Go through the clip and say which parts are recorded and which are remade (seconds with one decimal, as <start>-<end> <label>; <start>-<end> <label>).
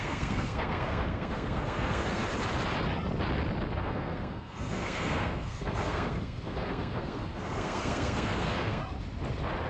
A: 0.0-2.2 remade; 2.2-3.8 recorded; 3.8-8.8 remade; 8.8-9.7 recorded